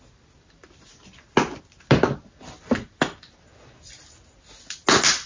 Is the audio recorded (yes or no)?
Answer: yes